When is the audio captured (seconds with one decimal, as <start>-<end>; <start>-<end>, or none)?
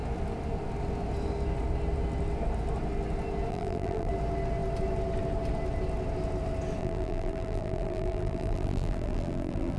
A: 0.0-3.5; 4.1-6.8